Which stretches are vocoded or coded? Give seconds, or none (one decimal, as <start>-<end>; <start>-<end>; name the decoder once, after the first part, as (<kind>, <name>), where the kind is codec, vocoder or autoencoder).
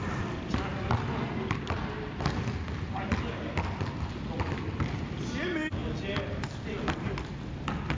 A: none